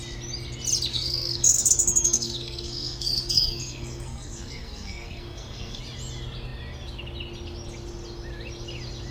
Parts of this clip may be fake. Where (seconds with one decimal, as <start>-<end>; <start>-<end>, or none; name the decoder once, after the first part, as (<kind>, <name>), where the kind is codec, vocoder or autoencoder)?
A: 0.9-5.8 (codec, SNAC)